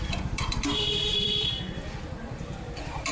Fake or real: fake